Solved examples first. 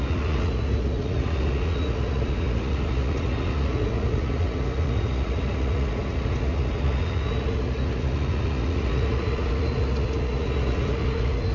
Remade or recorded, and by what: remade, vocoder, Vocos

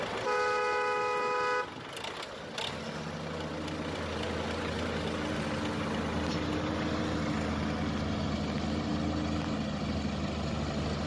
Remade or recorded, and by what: recorded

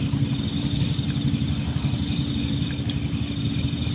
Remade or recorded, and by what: recorded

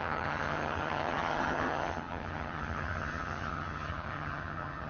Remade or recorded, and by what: remade, vocoder, HiFi-GAN